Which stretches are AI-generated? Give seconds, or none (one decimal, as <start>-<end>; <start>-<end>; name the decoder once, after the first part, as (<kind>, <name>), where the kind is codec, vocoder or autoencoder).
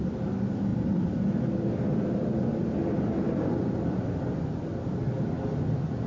0.7-4.4 (vocoder, BigVGAN v2)